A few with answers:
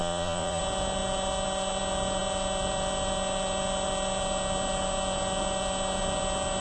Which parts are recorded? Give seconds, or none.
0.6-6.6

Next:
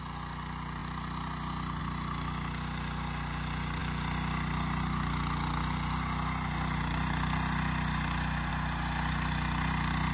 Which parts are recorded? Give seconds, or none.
0.0-10.1

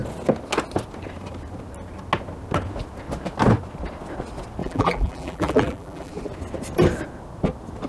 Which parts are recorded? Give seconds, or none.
0.0-4.6; 6.1-7.9